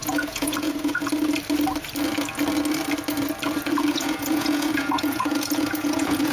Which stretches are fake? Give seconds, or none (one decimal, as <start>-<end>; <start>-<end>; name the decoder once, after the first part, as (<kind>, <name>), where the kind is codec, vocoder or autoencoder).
0.0-1.1 (vocoder, Vocos); 3.9-6.3